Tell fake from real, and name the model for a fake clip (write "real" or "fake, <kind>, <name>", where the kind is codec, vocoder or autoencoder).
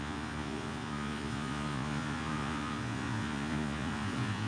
fake, vocoder, Vocos